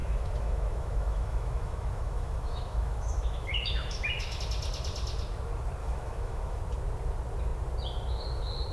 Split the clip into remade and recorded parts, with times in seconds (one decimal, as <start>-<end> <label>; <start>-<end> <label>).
0.0-4.4 remade; 4.4-5.8 recorded; 5.8-6.6 remade; 6.6-8.7 recorded